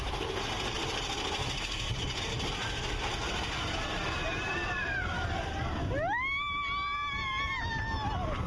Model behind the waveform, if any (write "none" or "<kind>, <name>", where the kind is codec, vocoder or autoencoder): none